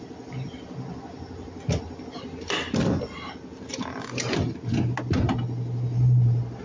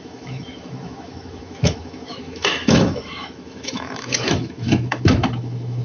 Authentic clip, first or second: first